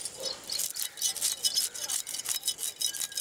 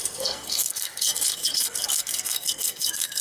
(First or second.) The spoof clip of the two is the second